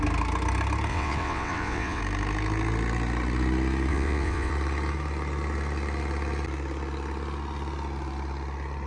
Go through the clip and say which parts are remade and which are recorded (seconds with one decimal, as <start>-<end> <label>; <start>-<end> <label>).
0.0-0.9 recorded; 0.9-2.0 remade; 2.0-3.9 recorded; 3.9-4.5 remade; 4.5-8.9 recorded